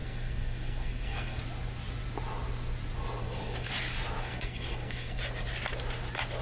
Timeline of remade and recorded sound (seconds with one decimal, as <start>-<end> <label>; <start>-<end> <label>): 0.0-1.4 remade; 1.4-3.2 recorded; 3.2-3.7 remade; 3.7-4.2 recorded; 4.2-5.2 remade; 5.2-6.4 recorded